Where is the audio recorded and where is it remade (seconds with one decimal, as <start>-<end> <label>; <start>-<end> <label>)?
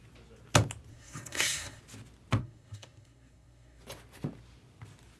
0.0-0.9 recorded; 0.9-1.8 remade; 1.8-2.4 recorded; 2.4-3.8 remade; 3.8-5.2 recorded